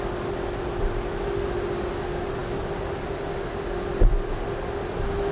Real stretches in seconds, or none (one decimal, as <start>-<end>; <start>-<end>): 0.0-5.3